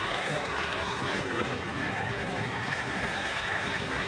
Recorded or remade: remade